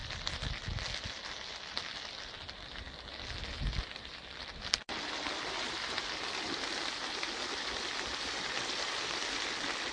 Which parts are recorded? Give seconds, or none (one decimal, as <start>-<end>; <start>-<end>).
0.0-9.9